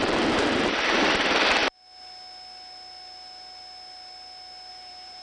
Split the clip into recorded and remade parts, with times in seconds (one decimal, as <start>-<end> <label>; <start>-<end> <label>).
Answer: 0.0-1.6 remade; 1.6-4.7 recorded; 4.7-5.2 remade